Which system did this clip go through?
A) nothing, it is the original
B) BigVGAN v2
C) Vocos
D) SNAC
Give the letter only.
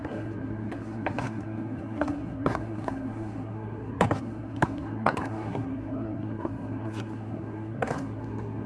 D